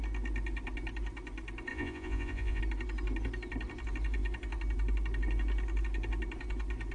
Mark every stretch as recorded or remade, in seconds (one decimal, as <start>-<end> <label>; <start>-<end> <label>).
0.0-1.7 recorded; 1.7-2.6 remade; 2.6-6.9 recorded